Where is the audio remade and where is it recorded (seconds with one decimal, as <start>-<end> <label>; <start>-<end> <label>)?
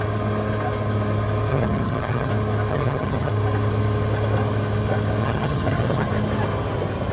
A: 0.0-1.5 recorded; 1.5-2.3 remade; 2.3-2.7 recorded; 2.7-3.3 remade; 3.3-5.2 recorded; 5.2-6.1 remade; 6.1-7.1 recorded